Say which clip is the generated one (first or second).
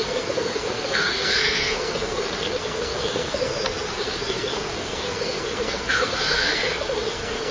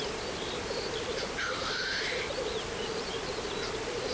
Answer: first